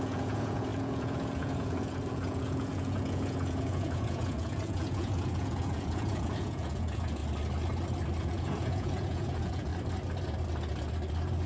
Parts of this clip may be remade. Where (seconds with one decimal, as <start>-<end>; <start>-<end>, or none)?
0.0-7.2; 8.2-9.7

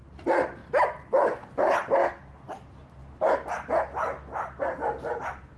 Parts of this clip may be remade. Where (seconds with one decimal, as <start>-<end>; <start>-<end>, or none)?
none